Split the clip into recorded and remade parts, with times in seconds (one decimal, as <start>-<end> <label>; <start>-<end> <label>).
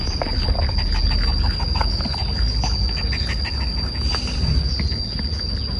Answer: 0.0-5.8 recorded